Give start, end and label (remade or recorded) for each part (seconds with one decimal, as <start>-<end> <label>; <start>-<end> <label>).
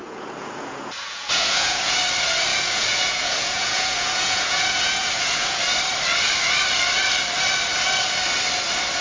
0.0-2.0 remade; 2.0-2.5 recorded; 2.5-5.6 remade; 5.6-9.0 recorded